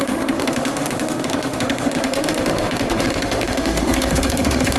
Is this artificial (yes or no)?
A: yes